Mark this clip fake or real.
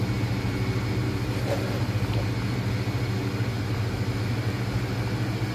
real